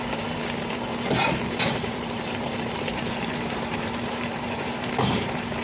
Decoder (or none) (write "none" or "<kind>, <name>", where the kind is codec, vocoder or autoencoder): vocoder, BigVGAN v2